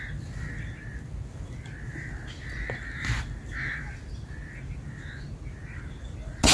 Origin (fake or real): real